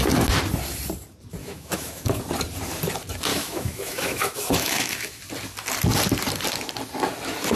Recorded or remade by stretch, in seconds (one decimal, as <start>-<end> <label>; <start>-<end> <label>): 0.0-1.4 recorded; 1.4-2.2 remade; 2.2-3.3 recorded; 3.3-5.2 remade; 5.2-7.6 recorded